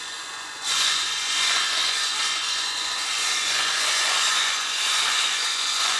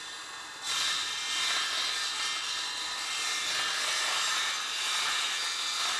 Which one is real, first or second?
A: second